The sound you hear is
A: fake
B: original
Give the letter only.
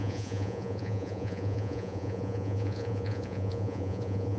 A